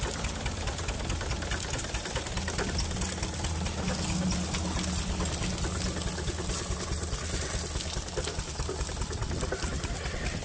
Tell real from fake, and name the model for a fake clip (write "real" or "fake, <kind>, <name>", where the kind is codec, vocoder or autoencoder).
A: real